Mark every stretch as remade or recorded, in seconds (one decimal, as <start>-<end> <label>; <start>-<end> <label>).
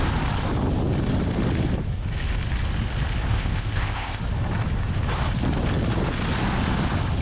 0.0-3.3 recorded; 3.3-4.2 remade; 4.2-7.2 recorded